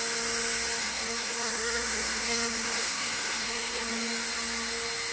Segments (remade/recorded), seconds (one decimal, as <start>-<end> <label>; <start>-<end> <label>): 0.0-0.8 recorded; 0.8-3.9 remade; 3.9-5.1 recorded